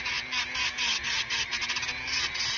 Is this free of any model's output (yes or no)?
yes